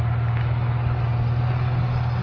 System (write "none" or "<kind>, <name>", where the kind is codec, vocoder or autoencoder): none